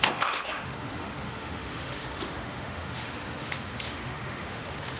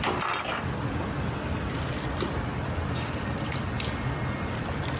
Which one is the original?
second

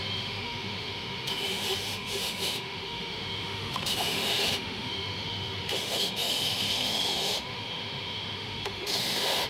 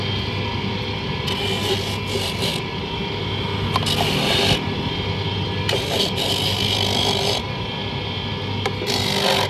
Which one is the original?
second